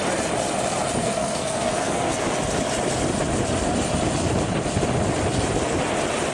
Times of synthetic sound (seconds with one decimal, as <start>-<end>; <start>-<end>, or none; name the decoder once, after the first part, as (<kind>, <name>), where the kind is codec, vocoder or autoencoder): 1.0-2.1 (codec, SNAC)